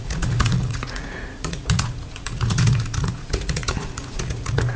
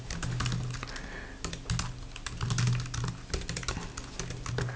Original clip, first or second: second